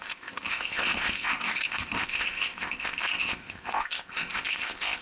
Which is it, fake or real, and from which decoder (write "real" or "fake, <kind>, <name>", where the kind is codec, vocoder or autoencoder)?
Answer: fake, codec, ZipCodec